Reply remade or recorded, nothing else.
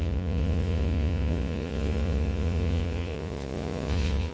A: remade